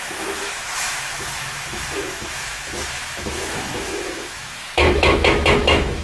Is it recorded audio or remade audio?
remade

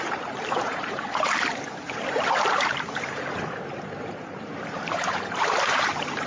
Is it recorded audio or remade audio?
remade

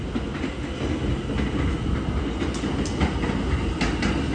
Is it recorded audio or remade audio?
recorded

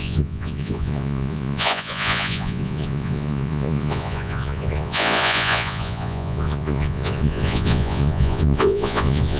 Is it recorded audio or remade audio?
remade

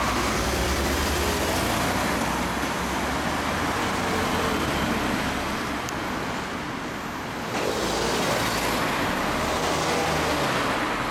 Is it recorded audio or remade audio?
recorded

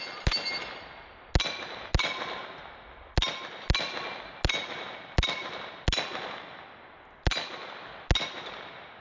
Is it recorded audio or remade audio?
recorded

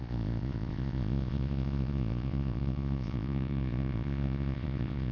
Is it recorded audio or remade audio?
remade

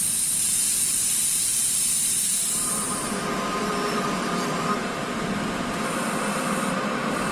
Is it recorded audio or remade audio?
remade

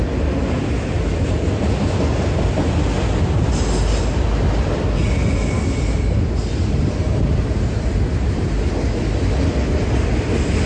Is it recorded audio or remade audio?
recorded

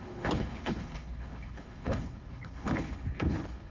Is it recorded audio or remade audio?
remade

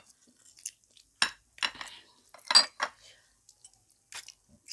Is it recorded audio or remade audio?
recorded